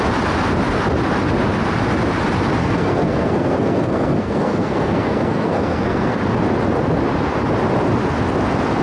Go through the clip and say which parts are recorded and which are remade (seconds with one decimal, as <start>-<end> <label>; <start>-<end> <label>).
0.0-2.6 recorded; 2.6-6.2 remade; 6.2-8.8 recorded